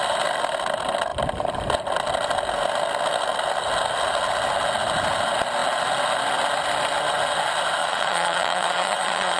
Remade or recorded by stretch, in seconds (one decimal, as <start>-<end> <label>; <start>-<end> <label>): 0.0-7.8 recorded; 7.8-9.4 remade